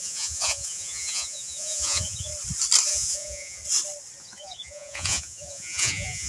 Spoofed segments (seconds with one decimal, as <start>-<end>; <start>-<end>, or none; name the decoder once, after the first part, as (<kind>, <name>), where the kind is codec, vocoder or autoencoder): 0.0-2.3 (vocoder, Vocos); 2.9-3.6; 4.2-6.3